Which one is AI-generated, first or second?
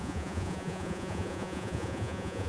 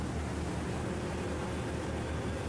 first